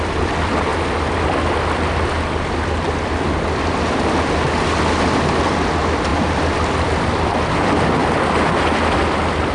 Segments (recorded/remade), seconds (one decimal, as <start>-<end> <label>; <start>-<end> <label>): 0.0-9.5 recorded